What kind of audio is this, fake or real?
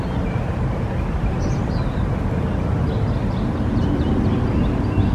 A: real